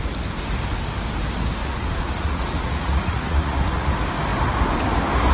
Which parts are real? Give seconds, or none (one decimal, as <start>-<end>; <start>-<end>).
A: 0.0-1.6; 3.9-5.3